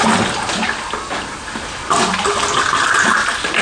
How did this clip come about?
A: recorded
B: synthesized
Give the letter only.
A